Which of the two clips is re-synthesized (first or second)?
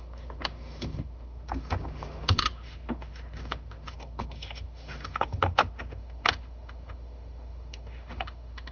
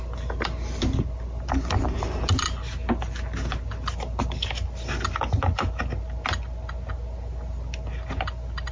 first